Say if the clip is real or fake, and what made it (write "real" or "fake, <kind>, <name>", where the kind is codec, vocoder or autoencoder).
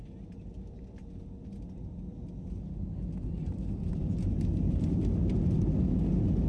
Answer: real